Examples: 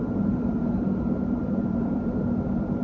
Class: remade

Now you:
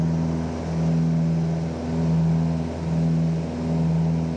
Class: recorded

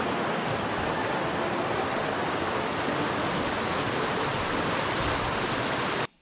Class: recorded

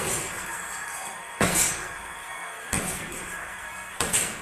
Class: remade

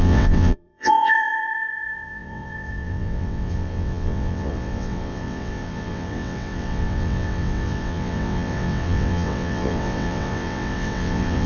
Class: remade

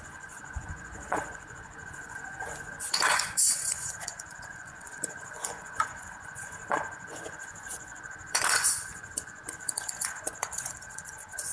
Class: remade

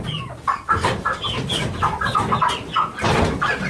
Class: recorded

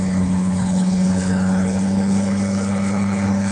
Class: remade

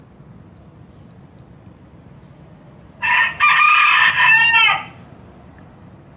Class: recorded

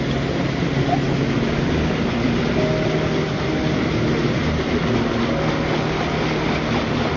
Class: recorded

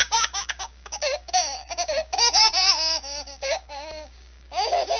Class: remade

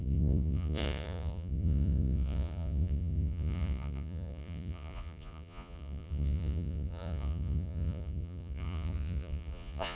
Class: remade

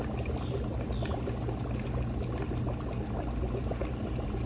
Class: recorded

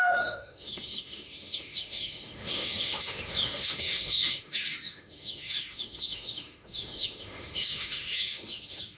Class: remade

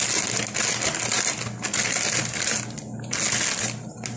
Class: recorded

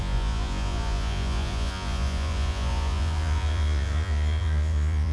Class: remade